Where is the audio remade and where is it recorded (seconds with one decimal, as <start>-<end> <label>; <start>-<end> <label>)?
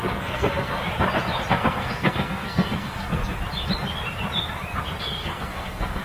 0.0-0.8 remade; 0.8-1.5 recorded; 1.5-3.2 remade; 3.2-5.0 recorded; 5.0-6.0 remade